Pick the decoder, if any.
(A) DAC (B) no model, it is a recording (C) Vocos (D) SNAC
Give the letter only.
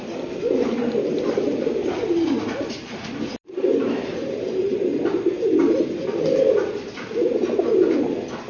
B